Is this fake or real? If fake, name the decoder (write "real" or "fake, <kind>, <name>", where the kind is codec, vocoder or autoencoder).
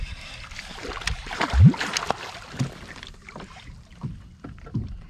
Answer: real